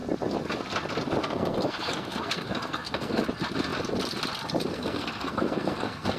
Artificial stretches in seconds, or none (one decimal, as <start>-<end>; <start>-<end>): 1.2-3.2; 4.7-6.2